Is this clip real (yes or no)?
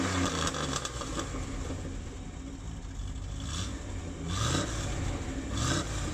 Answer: yes